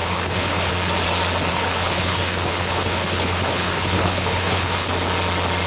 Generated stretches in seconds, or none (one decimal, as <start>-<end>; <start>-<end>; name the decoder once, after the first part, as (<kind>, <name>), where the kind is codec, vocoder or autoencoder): 0.0-0.7 (codec, HILCodec); 1.5-4.9